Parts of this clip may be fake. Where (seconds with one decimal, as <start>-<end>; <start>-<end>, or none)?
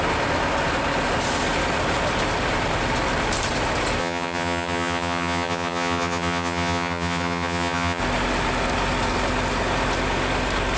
4.0-8.0